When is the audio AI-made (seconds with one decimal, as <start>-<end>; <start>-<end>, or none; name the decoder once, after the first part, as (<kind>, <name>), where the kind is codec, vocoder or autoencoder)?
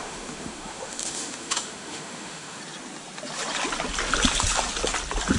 0.0-2.6 (autoencoder, DAC-VAE)